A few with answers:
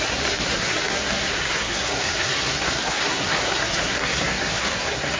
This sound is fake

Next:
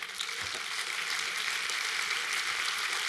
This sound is real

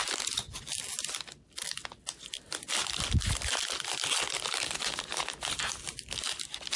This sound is real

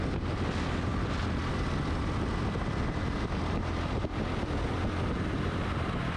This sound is real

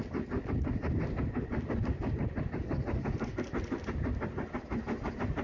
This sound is real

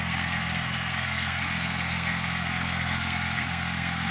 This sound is fake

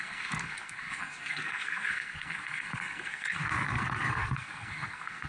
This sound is fake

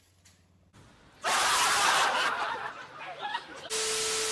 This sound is real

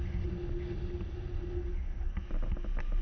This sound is real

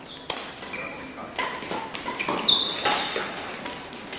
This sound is real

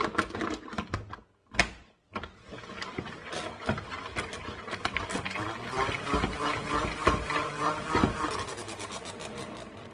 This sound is real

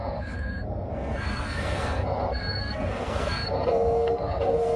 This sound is fake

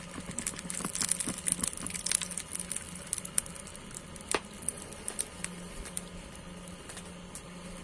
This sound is real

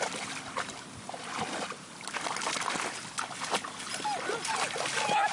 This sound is real